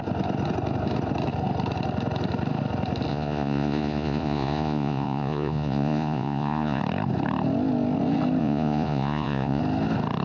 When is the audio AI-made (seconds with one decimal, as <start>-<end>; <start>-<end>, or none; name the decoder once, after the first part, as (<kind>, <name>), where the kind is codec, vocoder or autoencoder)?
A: 3.1-6.8 (vocoder, Vocos); 8.4-9.6